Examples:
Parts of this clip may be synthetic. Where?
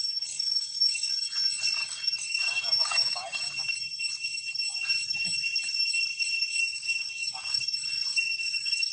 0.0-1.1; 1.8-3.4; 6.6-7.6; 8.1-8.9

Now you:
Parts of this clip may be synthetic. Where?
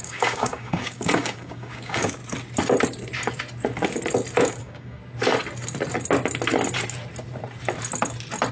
0.0-2.2; 4.6-5.0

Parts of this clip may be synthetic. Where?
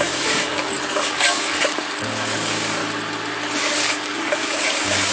0.0-2.8; 3.6-5.1